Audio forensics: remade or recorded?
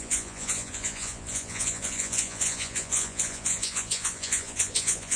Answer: remade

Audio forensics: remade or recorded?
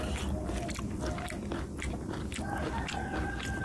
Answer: recorded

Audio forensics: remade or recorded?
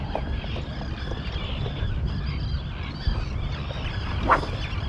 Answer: recorded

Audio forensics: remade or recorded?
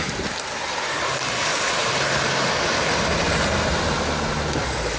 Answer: recorded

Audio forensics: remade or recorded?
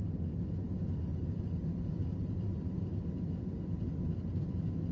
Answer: recorded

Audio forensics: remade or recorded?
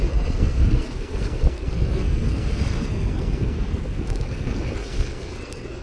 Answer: remade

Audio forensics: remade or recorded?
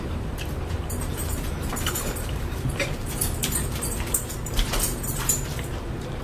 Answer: remade